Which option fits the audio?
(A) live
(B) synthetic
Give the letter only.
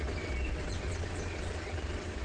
B